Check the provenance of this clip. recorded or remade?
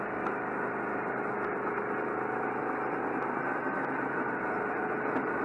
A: recorded